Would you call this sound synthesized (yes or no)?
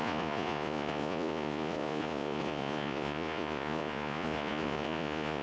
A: yes